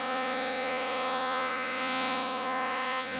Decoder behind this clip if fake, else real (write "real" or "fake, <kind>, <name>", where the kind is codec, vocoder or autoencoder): fake, vocoder, Vocos